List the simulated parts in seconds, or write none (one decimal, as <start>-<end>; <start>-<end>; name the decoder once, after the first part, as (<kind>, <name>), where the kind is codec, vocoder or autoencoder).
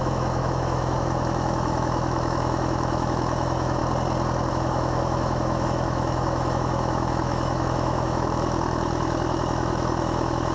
0.0-3.8 (autoencoder, DAC-VAE); 4.5-10.5